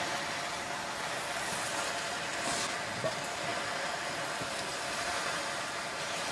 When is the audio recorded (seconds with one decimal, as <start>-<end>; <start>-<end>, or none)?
0.0-6.3